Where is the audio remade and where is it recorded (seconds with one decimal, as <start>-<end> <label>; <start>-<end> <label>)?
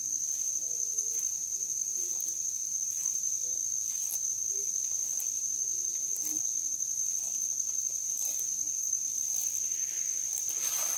0.0-3.6 remade; 3.6-8.4 recorded; 8.4-11.0 remade